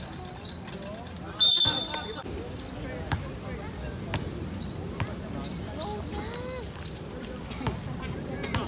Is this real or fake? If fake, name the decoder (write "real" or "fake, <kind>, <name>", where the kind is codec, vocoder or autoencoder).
real